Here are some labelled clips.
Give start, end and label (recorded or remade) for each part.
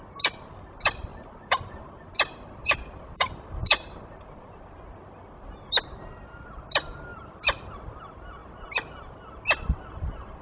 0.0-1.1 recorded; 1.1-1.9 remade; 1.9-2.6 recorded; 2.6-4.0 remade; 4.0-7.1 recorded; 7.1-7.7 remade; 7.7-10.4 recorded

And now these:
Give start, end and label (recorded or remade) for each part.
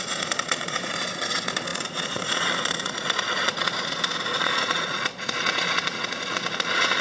0.0-7.0 remade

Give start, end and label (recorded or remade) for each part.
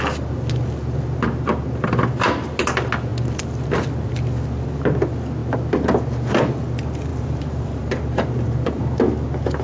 0.0-7.1 recorded; 7.1-8.8 remade; 8.8-9.6 recorded